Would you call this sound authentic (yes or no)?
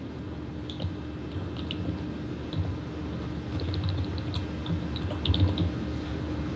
yes